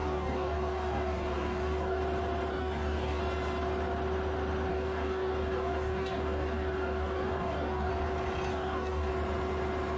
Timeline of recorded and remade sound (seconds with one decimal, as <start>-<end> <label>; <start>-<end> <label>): 0.0-2.0 remade; 2.0-2.5 recorded; 2.5-3.2 remade; 3.2-4.7 recorded; 4.7-7.9 remade; 7.9-8.5 recorded; 8.5-9.1 remade; 9.1-10.0 recorded